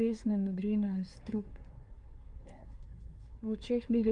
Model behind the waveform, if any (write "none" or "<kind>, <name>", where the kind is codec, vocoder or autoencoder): codec, SNAC